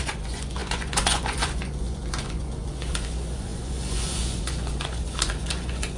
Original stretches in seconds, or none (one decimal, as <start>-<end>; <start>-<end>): none